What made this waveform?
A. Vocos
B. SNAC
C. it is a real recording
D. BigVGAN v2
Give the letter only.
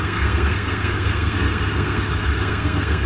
B